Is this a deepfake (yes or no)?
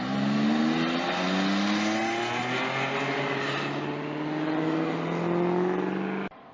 no